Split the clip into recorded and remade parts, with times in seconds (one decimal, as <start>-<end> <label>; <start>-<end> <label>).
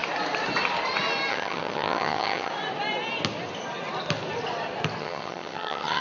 0.0-1.3 recorded; 1.3-2.5 remade; 2.5-5.0 recorded; 5.0-6.0 remade